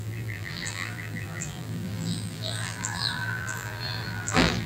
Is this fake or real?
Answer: fake